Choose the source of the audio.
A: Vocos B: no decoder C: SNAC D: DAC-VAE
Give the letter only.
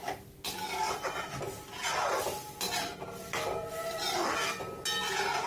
B